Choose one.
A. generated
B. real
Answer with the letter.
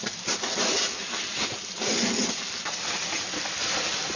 B